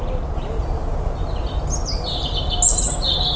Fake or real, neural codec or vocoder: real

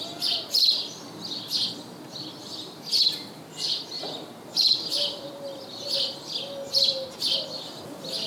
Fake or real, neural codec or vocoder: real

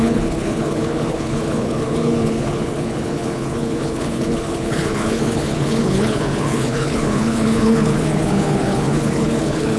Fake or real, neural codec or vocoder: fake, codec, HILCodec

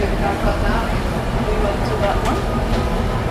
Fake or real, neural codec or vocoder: real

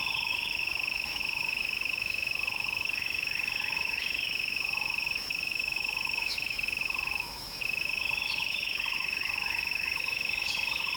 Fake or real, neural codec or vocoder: fake, autoencoder, DAC-VAE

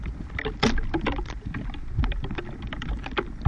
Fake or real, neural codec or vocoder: real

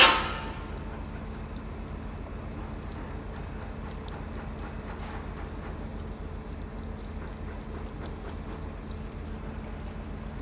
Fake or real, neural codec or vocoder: real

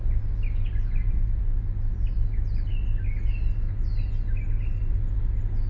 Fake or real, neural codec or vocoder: real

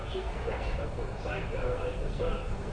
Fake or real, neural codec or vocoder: fake, codec, SNAC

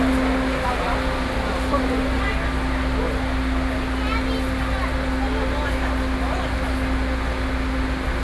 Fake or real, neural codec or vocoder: real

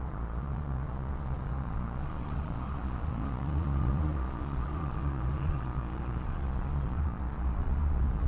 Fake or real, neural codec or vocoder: fake, vocoder, Vocos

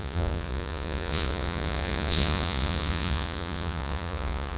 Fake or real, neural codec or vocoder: fake, vocoder, Vocos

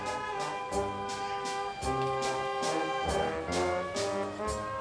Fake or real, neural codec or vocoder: real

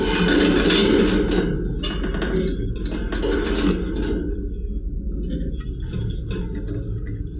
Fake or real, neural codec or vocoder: real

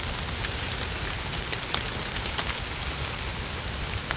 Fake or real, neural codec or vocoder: real